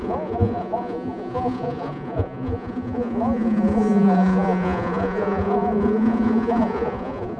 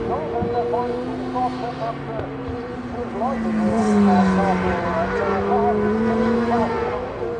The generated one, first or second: first